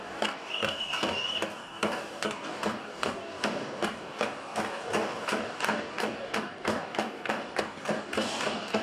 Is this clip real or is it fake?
fake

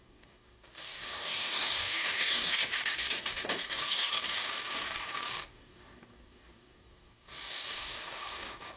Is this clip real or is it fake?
fake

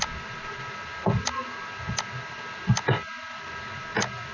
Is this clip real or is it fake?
real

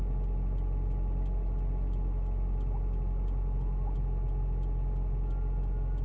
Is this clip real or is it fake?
real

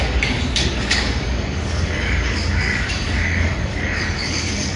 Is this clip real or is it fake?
fake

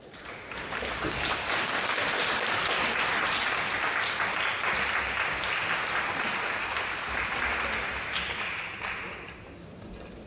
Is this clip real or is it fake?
real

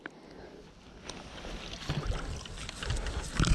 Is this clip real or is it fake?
real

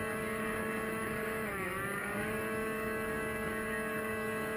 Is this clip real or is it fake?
fake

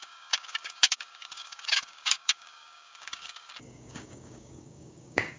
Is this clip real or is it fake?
fake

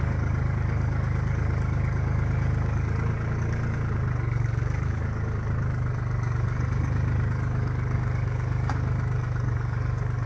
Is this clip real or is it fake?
fake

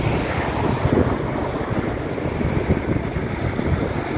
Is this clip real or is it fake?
real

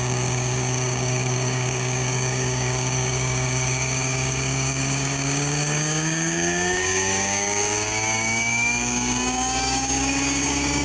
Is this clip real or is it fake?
fake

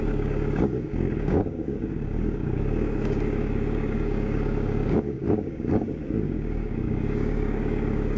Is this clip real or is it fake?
fake